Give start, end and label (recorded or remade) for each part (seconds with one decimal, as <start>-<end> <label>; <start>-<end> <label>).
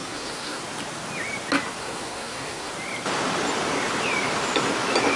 0.0-0.6 remade; 0.6-1.8 recorded; 1.8-2.7 remade; 2.7-5.2 recorded